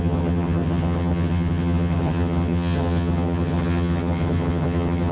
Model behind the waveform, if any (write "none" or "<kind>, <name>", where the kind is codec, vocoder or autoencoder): vocoder, HiFi-GAN